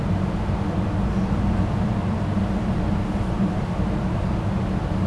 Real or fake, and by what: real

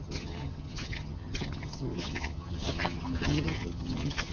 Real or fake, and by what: fake, vocoder, HiFi-GAN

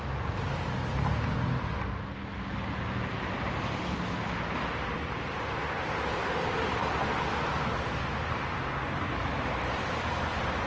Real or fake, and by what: real